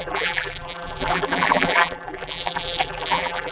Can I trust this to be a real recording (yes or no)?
no